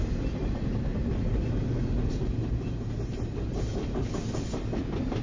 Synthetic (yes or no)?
no